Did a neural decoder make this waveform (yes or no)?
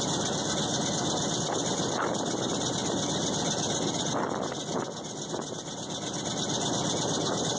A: no